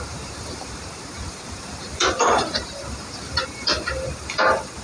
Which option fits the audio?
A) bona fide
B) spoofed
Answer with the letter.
B